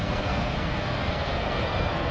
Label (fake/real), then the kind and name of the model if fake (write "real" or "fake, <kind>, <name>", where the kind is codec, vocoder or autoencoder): fake, codec, SNAC